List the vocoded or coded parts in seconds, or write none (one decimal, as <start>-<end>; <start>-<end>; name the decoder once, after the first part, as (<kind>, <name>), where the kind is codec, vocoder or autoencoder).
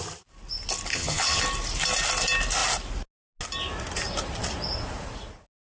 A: 0.9-1.4 (vocoder, HiFi-GAN)